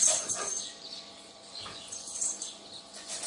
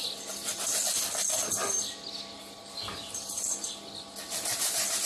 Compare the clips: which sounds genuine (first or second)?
second